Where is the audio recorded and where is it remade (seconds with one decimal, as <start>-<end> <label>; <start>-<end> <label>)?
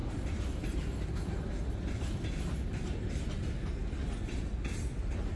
0.0-5.4 recorded